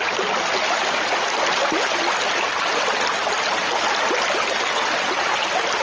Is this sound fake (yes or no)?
no